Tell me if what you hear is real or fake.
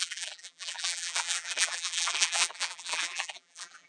fake